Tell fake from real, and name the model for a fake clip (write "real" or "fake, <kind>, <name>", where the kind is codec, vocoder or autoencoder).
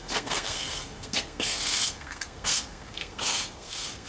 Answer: fake, codec, SNAC